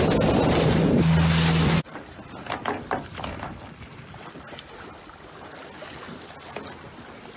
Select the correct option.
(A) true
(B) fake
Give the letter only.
A